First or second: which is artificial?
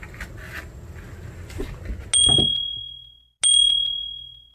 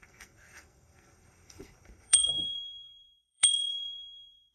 second